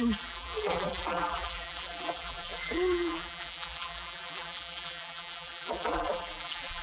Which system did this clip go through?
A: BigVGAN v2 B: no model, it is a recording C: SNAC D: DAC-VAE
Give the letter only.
A